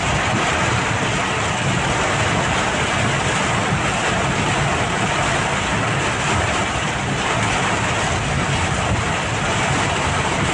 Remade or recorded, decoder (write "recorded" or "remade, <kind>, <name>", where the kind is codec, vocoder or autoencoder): recorded